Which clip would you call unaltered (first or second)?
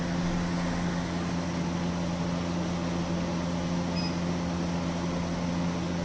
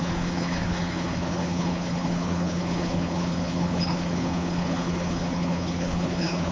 first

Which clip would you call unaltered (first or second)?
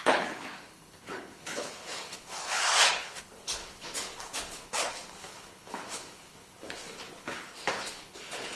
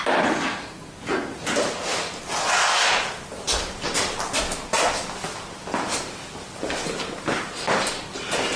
second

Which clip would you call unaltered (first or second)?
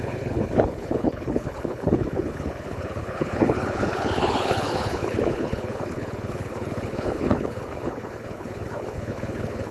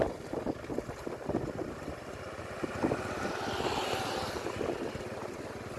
second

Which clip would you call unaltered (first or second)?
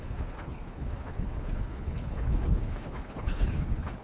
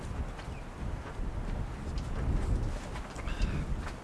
second